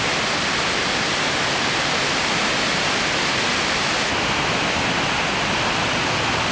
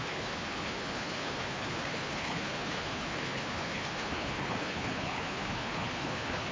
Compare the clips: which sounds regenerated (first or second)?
second